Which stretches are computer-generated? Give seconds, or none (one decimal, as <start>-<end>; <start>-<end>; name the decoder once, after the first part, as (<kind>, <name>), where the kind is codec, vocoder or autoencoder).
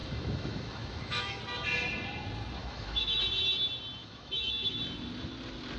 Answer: 0.0-1.4 (autoencoder, DAC-VAE); 2.6-3.2; 4.0-4.8